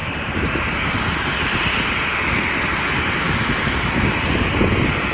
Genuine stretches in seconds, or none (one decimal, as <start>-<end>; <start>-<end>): 1.6-5.1